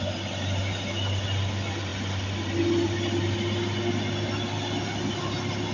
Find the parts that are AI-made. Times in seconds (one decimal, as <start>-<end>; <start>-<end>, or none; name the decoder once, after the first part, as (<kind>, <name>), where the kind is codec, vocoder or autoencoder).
none